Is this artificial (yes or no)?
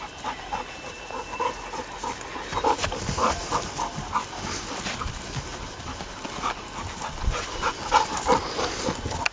no